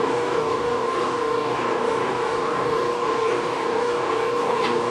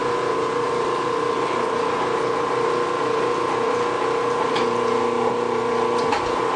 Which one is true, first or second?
second